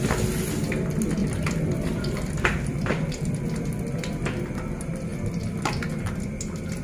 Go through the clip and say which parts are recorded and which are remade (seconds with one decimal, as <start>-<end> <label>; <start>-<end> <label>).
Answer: 0.0-1.2 recorded; 1.2-3.4 remade; 3.4-5.1 recorded; 5.1-5.9 remade; 5.9-6.8 recorded